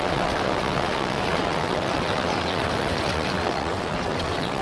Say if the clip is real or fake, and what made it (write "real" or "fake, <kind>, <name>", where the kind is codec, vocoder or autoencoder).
fake, vocoder, WaveNeXt